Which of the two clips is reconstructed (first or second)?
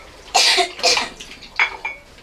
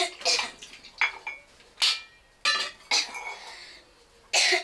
first